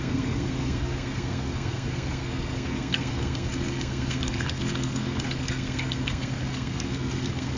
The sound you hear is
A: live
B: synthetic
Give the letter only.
B